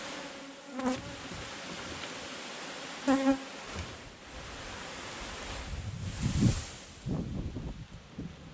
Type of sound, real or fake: real